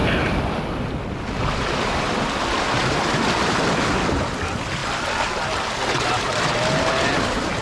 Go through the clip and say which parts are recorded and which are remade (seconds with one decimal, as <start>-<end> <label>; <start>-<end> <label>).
0.0-7.6 recorded